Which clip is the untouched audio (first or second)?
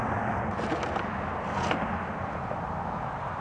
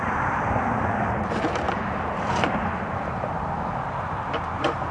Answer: first